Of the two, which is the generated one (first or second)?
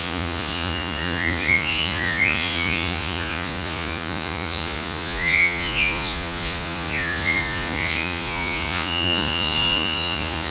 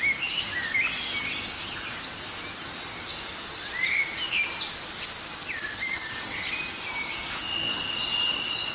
first